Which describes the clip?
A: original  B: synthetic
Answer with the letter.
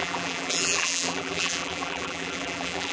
B